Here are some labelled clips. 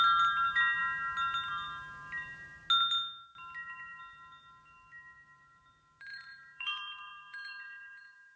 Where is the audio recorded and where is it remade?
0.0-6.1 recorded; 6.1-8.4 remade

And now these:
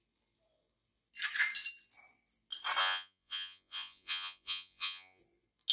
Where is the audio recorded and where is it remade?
0.0-2.8 recorded; 2.8-5.2 remade; 5.2-5.7 recorded

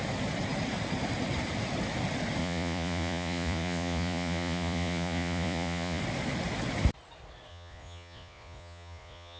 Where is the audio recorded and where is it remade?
0.0-2.4 recorded; 2.4-6.0 remade; 6.0-7.5 recorded; 7.5-9.4 remade

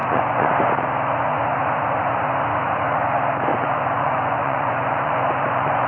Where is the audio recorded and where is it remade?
0.0-0.5 remade; 0.5-3.5 recorded; 3.5-5.9 remade

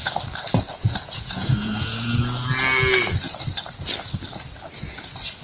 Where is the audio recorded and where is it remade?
0.0-0.7 recorded; 0.7-2.1 remade; 2.1-5.4 recorded

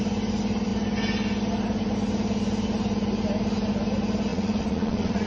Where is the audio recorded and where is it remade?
0.0-4.3 recorded; 4.3-5.3 remade

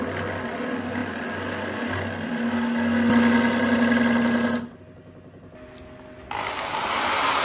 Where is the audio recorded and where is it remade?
0.0-7.4 recorded